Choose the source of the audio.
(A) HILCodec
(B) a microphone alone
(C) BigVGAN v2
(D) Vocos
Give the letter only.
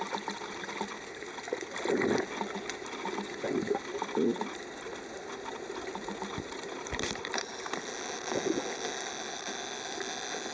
B